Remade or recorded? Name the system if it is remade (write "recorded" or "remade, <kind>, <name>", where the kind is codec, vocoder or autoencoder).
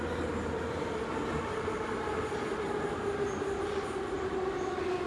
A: recorded